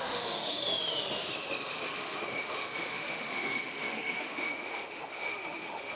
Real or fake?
fake